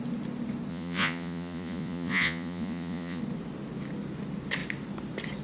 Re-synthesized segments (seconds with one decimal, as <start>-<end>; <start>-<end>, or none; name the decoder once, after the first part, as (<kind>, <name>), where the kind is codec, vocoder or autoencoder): 0.7-3.2 (vocoder, Vocos)